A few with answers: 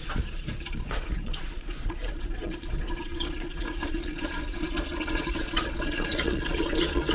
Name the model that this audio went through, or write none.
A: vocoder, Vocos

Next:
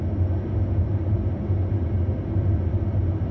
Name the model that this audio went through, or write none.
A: none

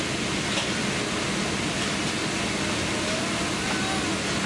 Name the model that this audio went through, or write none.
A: none